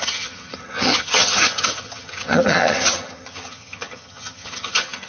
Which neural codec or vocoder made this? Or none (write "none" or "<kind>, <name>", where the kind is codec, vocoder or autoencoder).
vocoder, HiFi-GAN